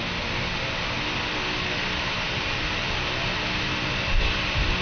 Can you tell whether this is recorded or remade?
recorded